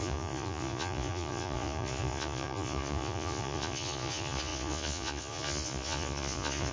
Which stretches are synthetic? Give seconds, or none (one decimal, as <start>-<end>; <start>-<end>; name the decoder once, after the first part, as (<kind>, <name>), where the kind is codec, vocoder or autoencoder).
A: 0.0-6.7 (vocoder, Vocos)